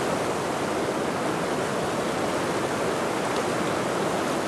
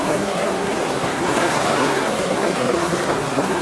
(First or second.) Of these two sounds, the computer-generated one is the second